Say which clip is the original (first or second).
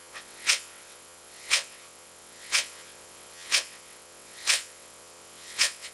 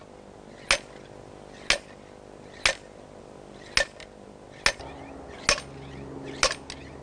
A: second